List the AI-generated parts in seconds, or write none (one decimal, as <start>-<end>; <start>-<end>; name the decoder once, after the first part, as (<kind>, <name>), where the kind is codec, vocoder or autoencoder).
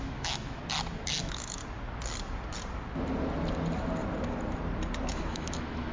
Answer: 0.0-0.6 (autoencoder, DAC-VAE); 1.2-1.6; 5.1-5.9